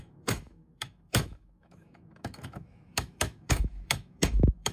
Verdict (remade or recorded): remade